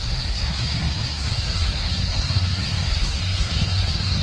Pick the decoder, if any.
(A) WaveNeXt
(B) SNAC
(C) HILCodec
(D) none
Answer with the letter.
B